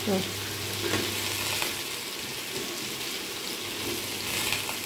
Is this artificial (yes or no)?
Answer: no